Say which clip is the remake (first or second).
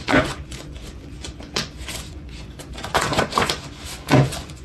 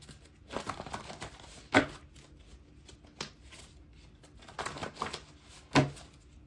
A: first